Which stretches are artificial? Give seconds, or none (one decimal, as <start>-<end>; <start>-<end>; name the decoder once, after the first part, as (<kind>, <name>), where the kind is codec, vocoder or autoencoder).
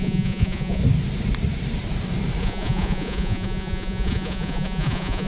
0.0-0.8 (vocoder, Vocos); 2.4-5.3